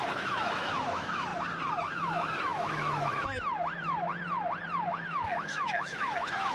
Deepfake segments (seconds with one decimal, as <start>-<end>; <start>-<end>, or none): 0.0-1.3; 1.9-4.1; 4.9-6.5